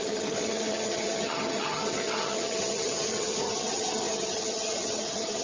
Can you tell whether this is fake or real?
fake